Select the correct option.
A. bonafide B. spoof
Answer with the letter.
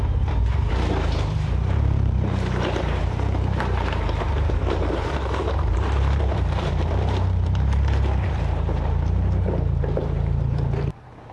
B